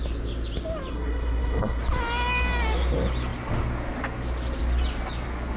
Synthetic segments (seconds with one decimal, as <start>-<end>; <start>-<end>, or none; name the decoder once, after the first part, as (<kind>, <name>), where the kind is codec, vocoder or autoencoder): 0.9-1.8 (codec, SNAC)